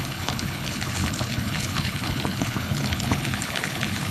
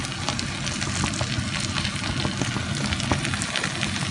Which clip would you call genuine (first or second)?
second